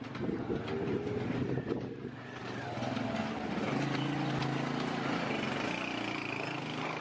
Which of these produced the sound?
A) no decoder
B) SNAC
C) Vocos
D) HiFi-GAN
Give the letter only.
A